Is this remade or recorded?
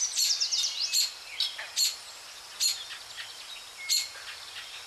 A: recorded